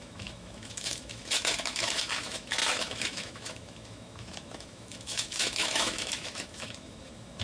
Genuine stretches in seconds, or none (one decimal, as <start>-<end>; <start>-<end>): none